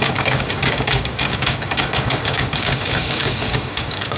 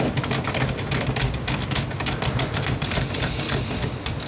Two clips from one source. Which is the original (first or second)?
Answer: second